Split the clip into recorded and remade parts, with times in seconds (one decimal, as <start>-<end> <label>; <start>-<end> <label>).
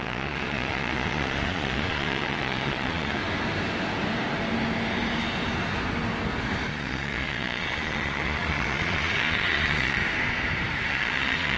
0.0-3.2 remade; 3.2-6.7 recorded; 6.7-10.0 remade; 10.0-10.9 recorded; 10.9-11.6 remade